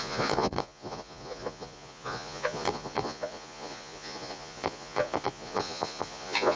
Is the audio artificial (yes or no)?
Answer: yes